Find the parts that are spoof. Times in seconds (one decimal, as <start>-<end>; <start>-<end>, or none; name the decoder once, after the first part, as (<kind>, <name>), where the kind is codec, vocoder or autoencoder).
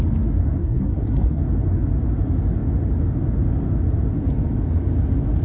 0.6-1.4 (codec, SNAC)